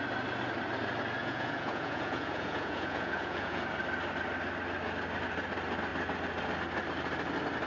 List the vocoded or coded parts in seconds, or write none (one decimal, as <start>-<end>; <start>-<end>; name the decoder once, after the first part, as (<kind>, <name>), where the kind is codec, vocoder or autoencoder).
1.2-3.6 (vocoder, Vocos)